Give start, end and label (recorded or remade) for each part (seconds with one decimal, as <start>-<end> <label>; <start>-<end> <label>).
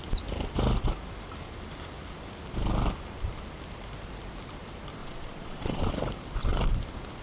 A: 0.0-5.0 recorded; 5.0-5.9 remade; 5.9-7.2 recorded